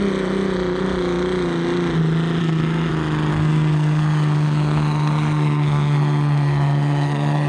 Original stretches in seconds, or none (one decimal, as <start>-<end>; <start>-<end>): 0.0-2.4; 2.9-3.3